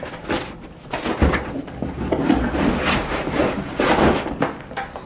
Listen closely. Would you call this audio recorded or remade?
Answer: recorded